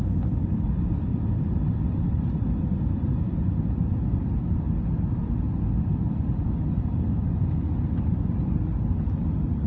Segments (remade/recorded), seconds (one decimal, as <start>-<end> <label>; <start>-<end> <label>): 0.0-9.7 recorded